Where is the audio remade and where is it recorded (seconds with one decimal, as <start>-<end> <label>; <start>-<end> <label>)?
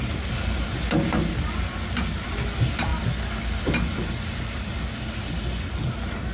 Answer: 0.0-6.3 recorded